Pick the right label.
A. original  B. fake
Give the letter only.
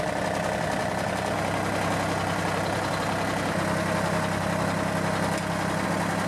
A